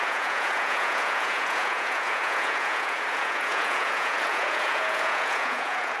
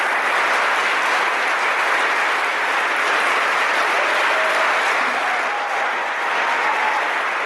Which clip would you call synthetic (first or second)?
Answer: first